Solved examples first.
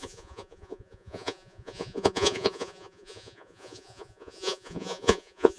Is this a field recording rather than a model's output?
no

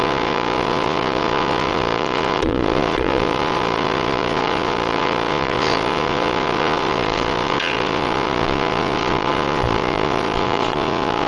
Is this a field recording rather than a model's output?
no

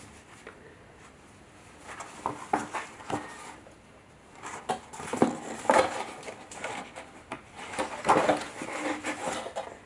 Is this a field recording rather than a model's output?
yes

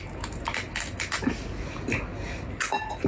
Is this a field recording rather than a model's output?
yes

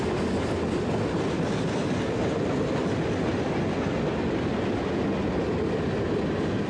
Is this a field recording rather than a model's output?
yes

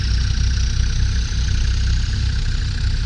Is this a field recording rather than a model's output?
yes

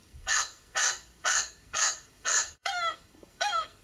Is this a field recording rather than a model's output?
no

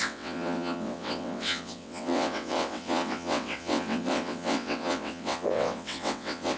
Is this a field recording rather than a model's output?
no